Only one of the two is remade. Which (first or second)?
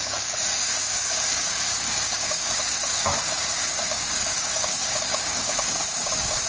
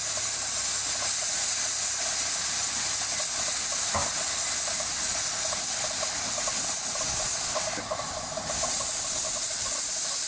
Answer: first